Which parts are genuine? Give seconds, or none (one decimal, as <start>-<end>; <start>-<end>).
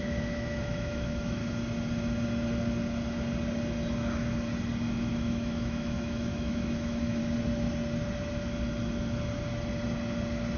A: 1.4-5.1; 7.2-10.6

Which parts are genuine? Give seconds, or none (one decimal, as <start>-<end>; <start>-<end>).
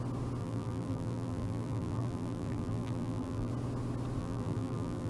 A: 0.0-0.4; 3.5-4.2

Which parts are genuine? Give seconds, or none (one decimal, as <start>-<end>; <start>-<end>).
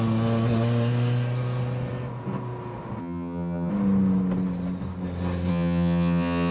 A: 0.0-3.0; 3.7-5.5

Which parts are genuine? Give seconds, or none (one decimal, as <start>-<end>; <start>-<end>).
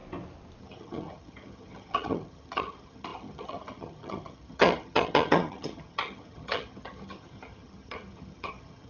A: 0.0-0.6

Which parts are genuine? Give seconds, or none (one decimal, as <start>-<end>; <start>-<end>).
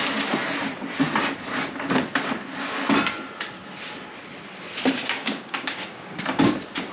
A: 0.0-5.2; 6.5-6.9